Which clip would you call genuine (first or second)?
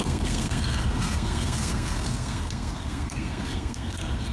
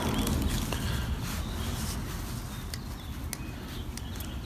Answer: second